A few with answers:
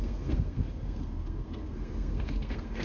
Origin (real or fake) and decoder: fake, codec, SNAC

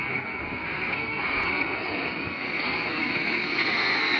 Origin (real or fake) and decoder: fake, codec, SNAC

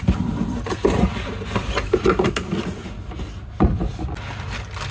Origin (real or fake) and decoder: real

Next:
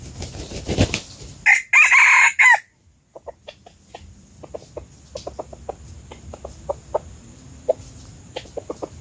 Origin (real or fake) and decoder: real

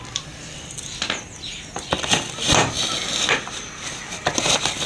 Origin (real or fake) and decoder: real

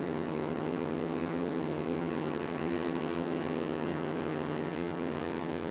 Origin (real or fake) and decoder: fake, vocoder, HiFi-GAN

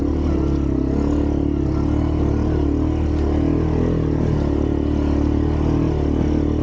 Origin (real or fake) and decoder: real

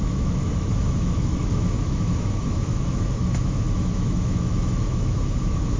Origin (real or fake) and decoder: fake, autoencoder, DAC-VAE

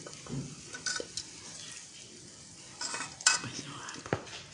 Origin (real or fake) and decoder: real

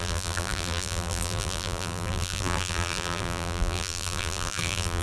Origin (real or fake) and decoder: fake, vocoder, BigVGAN v2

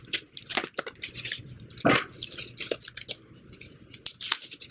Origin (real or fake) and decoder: real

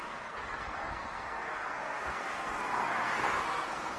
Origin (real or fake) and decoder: fake, codec, SNAC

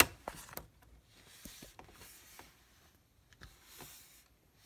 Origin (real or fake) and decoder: real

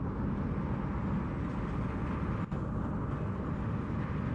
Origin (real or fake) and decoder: real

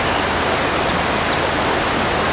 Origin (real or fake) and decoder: real